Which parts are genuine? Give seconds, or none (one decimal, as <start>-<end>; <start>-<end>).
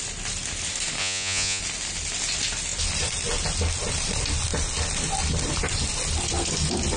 0.0-1.0; 1.6-7.0